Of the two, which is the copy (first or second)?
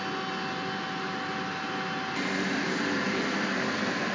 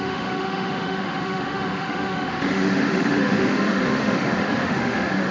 second